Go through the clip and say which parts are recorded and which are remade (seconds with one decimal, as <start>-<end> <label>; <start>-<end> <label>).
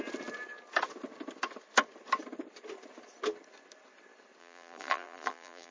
0.0-4.4 recorded; 4.4-5.7 remade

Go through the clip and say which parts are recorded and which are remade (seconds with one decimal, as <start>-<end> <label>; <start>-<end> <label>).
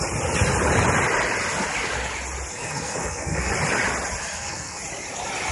0.0-2.5 recorded; 2.5-3.5 remade; 3.5-4.2 recorded; 4.2-4.8 remade; 4.8-5.5 recorded